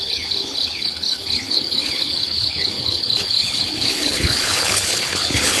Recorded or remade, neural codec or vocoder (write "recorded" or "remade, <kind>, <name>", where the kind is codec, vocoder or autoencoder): remade, codec, HILCodec